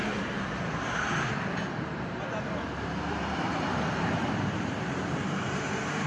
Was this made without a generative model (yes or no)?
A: no